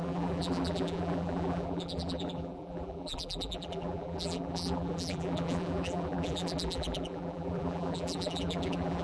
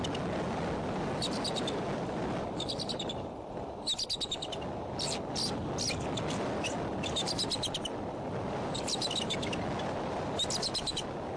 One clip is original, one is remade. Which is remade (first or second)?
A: first